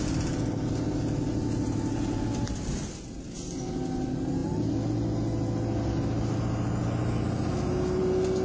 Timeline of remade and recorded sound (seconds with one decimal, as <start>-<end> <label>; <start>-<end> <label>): 0.0-8.4 recorded